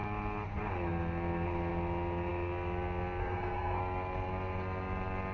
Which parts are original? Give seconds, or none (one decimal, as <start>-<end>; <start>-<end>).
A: 0.0-3.2; 3.8-5.3